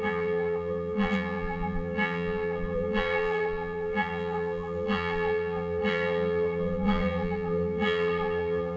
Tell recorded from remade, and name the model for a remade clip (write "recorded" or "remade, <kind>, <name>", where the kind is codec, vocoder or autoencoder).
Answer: remade, vocoder, BigVGAN v2